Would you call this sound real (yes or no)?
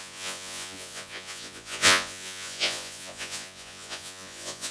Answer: no